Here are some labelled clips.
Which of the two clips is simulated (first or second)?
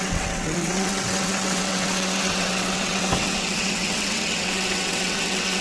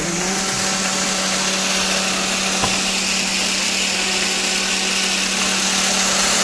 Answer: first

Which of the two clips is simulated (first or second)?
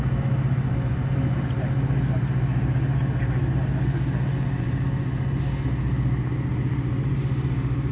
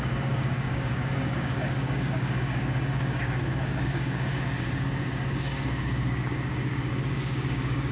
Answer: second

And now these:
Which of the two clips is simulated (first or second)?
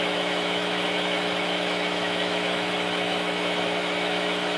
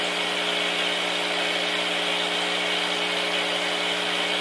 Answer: first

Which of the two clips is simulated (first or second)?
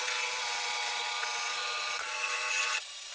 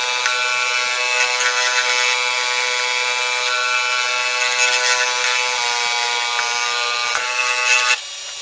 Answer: first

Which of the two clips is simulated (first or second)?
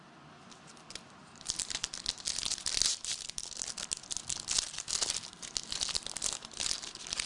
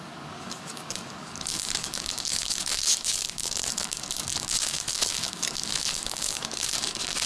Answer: second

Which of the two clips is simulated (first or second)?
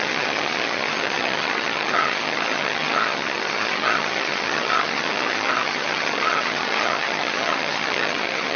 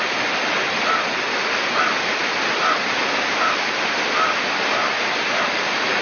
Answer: first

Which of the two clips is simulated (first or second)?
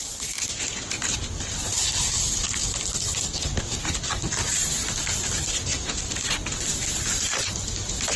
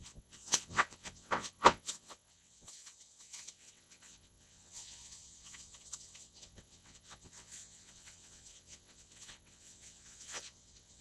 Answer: second